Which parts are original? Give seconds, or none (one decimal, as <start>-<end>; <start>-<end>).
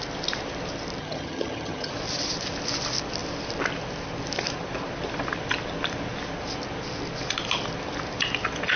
0.0-1.0; 1.9-8.8